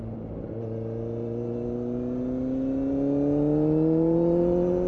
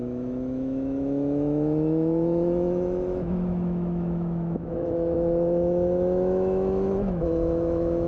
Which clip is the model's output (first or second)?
second